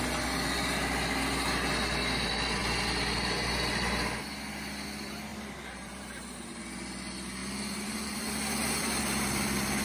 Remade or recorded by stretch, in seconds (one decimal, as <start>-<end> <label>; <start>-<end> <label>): 0.0-5.3 recorded; 5.3-6.6 remade; 6.6-7.4 recorded; 7.4-8.3 remade; 8.3-9.8 recorded